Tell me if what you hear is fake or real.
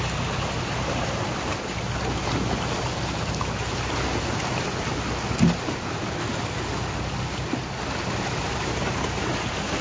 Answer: real